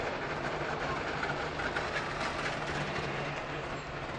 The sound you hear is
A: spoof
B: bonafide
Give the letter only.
B